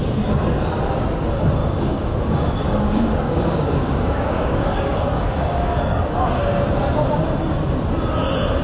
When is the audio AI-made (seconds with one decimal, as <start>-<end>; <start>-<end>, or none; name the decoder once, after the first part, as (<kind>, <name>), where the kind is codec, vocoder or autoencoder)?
1.6-6.4 (codec, DAC)